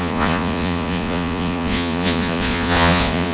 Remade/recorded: remade